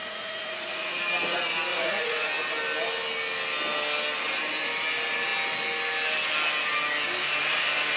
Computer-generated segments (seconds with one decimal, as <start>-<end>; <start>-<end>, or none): 0.0-1.0; 1.7-2.3